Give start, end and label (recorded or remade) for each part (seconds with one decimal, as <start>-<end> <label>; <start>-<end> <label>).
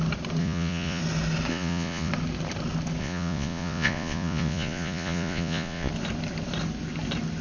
0.0-0.4 recorded; 0.4-1.0 remade; 1.0-1.5 recorded; 1.5-2.1 remade; 2.1-3.0 recorded; 3.0-5.9 remade; 5.9-7.4 recorded